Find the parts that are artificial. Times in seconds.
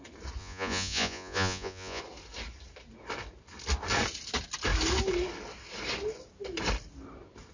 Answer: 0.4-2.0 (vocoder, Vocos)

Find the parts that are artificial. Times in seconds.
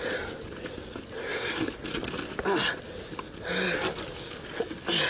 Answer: none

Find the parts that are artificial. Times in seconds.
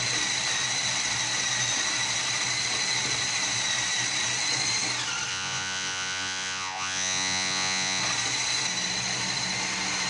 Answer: 5.3-8.0 (vocoder, Vocos)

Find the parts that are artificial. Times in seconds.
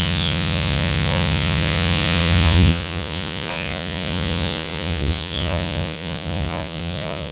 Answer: 0.0-7.3 (vocoder, Vocos)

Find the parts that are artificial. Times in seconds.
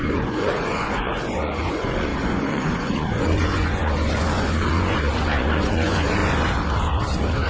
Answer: 0.0-6.2 (vocoder, Vocos)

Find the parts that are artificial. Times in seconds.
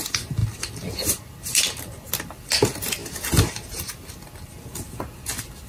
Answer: none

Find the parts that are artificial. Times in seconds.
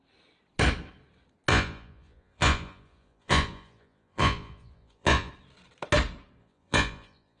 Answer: 1.5-5.3 (vocoder, Vocos); 6.4-7.4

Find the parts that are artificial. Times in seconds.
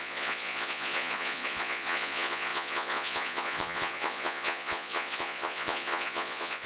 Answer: 0.0-6.7 (vocoder, Vocos)